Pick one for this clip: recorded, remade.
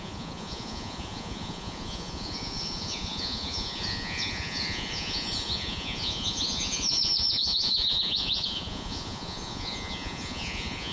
remade